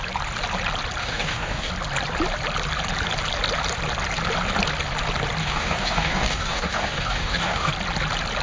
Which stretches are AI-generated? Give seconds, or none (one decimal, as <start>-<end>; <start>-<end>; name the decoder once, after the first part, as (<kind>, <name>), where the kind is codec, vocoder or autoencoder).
1.0-1.7 (codec, DAC); 5.4-7.7